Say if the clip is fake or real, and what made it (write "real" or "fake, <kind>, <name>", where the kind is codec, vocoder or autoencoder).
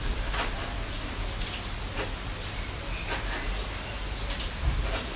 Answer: real